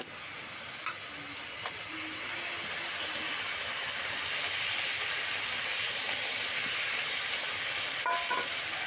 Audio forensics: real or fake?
real